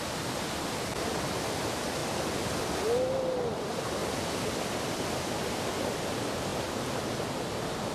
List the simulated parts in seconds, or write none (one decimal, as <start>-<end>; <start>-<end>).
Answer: 0.0-2.0; 3.2-4.0; 4.5-6.5; 7.5-7.9